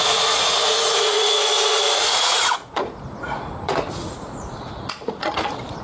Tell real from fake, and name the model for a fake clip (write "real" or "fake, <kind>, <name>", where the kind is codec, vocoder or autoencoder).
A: fake, vocoder, Vocos